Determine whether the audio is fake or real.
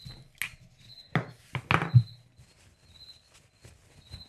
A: real